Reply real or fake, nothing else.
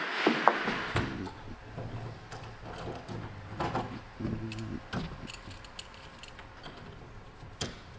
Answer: real